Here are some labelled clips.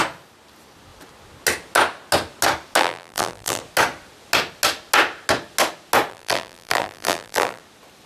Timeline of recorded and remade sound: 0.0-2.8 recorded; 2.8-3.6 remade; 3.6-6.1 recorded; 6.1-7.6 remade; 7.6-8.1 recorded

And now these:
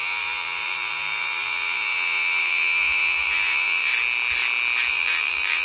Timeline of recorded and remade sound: 0.0-3.9 remade; 3.9-4.9 recorded; 4.9-5.6 remade

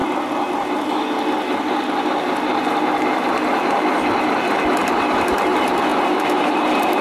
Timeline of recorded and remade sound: 0.0-4.8 recorded; 4.8-5.5 remade; 5.5-7.0 recorded